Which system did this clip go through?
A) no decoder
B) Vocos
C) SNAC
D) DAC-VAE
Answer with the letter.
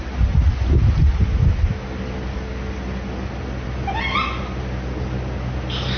A